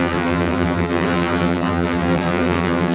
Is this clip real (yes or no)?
no